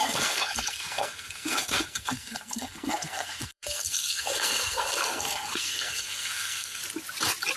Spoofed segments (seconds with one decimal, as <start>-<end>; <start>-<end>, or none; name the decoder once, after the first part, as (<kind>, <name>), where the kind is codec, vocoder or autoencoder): 0.0-6.8 (codec, SNAC)

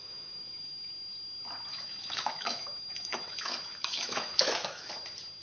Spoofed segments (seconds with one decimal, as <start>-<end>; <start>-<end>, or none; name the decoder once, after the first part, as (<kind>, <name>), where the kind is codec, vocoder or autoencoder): 0.0-0.9 (autoencoder, DAC-VAE); 1.7-4.9

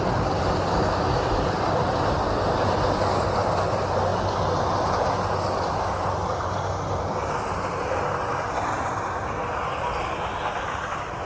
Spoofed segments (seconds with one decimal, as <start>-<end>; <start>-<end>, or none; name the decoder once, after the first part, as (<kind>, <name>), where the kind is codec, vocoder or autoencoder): none

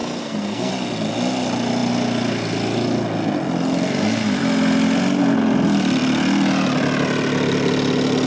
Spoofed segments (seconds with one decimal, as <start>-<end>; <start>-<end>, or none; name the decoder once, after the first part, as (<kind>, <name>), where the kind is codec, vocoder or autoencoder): 0.0-0.7 (codec, SNAC)

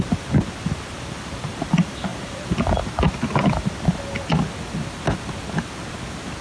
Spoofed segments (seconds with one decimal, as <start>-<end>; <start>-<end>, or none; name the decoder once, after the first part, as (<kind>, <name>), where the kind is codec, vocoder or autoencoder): none